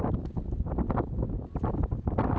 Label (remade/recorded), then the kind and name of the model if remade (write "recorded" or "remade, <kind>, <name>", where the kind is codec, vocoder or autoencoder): recorded